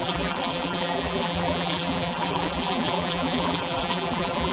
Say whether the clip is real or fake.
fake